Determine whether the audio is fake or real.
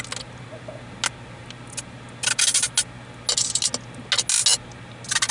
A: real